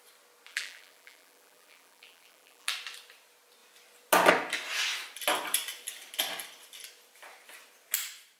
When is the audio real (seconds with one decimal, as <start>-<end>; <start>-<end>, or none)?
0.0-0.5; 2.7-8.4